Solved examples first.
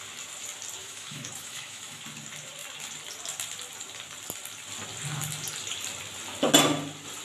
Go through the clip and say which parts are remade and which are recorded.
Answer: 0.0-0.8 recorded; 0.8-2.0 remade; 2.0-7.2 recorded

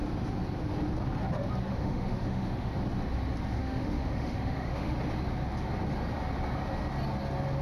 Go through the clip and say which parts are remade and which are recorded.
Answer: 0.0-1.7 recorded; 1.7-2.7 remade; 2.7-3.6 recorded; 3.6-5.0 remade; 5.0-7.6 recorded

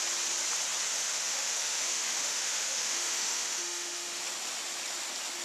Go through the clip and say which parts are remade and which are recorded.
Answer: 0.0-1.0 recorded; 1.0-4.2 remade; 4.2-5.4 recorded

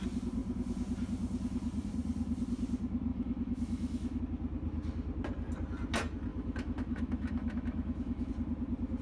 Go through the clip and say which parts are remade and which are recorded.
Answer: 0.0-3.1 recorded; 3.1-4.2 remade; 4.2-6.3 recorded; 6.3-8.3 remade; 8.3-9.0 recorded

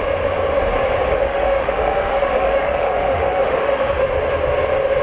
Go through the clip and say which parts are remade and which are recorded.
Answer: 0.0-1.1 recorded; 1.1-4.1 remade; 4.1-5.0 recorded

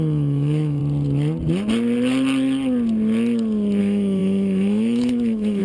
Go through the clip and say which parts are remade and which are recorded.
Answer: 0.0-0.8 remade; 0.8-3.8 recorded; 3.8-5.6 remade